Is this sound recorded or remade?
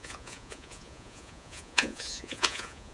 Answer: remade